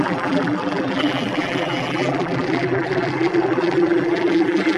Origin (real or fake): fake